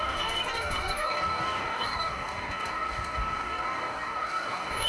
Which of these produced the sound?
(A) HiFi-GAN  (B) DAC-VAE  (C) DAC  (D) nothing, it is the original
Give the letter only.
C